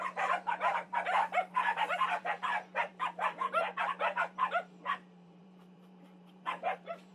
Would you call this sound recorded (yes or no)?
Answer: no